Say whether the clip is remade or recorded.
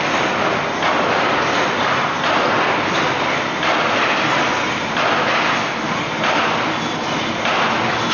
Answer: recorded